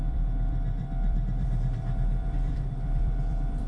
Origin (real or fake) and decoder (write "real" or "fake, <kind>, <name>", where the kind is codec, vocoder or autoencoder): fake, vocoder, BigVGAN v2